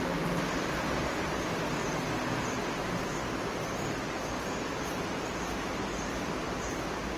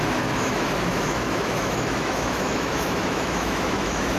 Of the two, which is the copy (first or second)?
second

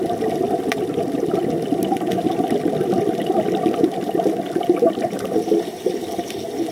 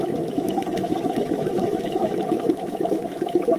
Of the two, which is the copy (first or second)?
second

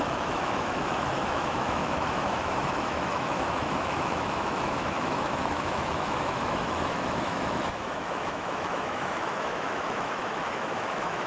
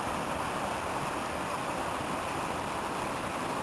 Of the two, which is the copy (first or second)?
first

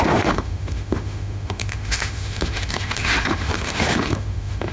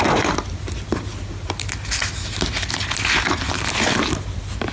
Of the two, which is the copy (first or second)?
first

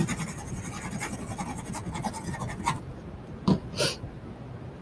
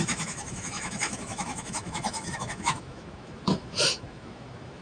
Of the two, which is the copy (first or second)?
second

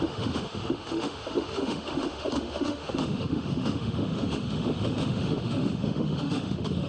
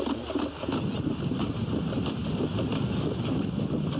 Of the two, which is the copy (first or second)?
first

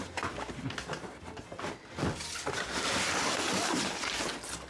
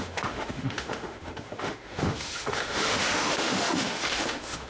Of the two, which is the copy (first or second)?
second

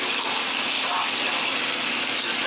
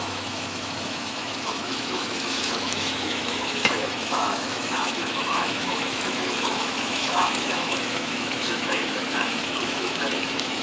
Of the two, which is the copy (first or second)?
second